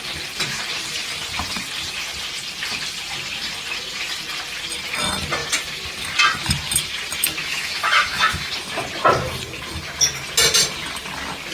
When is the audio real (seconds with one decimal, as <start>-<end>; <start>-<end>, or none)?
0.0-7.4; 8.5-11.5